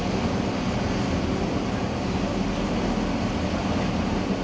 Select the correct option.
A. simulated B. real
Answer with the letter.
B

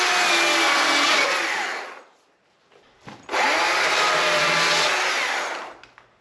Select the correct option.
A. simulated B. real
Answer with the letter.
B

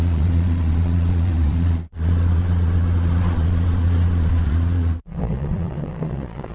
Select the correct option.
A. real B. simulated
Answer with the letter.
B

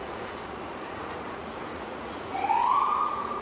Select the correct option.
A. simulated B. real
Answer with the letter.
A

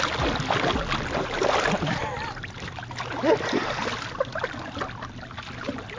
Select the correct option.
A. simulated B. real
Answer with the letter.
B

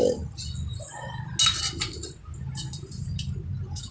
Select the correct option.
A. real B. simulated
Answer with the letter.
A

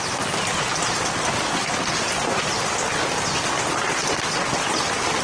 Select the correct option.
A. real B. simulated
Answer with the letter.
A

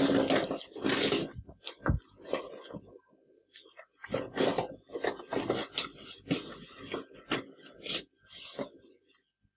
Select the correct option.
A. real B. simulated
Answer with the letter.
A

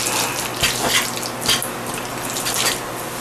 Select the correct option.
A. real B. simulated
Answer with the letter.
A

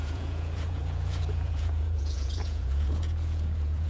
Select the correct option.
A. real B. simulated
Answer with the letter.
B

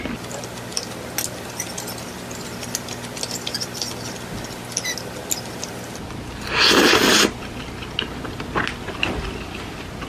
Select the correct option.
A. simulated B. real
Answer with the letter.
B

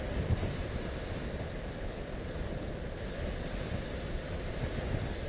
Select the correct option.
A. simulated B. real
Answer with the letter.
B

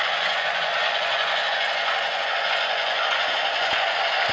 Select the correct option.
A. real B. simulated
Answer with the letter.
B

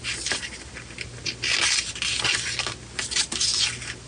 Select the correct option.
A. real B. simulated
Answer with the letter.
A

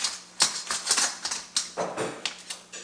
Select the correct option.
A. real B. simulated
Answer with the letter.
A